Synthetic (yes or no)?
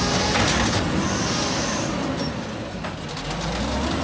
no